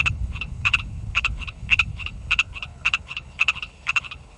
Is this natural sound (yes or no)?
no